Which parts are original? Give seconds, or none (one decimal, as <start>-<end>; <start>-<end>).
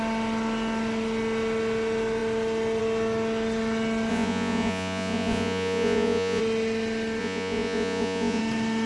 0.0-4.1; 6.4-7.2; 8.4-8.9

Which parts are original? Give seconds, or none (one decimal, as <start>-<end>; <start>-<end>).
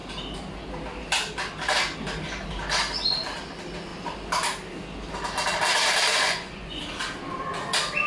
0.0-6.1; 6.8-8.1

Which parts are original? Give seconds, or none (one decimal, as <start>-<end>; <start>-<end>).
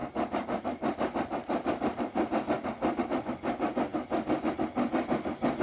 0.0-5.6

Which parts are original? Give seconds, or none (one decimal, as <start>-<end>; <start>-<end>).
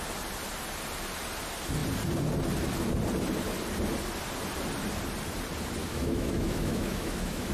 0.0-5.8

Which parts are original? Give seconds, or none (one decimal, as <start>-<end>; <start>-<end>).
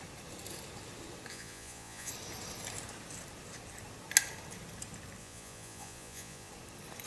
0.0-1.3; 2.1-5.2; 6.5-7.1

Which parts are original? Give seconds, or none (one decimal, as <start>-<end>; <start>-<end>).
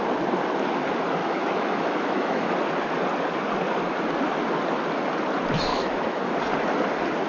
0.0-1.2; 2.5-5.7; 6.3-7.3